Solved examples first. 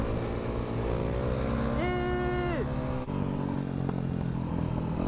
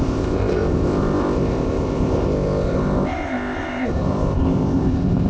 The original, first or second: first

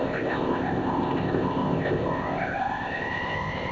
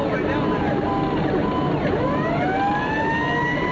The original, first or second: second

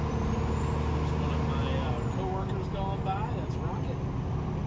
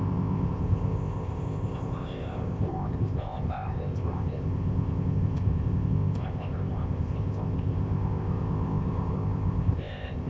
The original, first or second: first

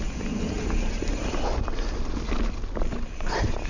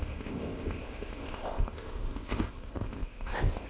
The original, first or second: first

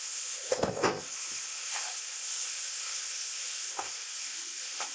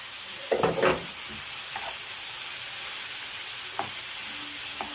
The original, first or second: second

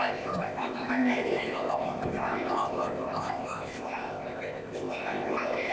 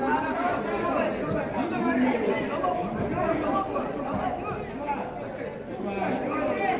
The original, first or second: second